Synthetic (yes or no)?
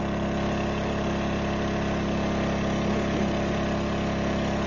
no